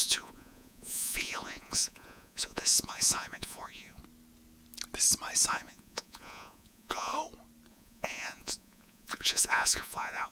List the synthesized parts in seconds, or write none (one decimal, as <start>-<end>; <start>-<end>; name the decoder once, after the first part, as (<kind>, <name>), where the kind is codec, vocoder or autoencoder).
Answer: 0.0-4.0 (vocoder, Vocos); 5.5-7.1; 7.7-10.3